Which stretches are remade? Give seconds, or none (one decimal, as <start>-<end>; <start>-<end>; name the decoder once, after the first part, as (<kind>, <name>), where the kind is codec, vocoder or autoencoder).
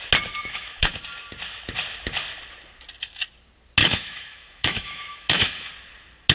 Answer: 0.4-1.0 (autoencoder, DAC-VAE); 3.8-5.7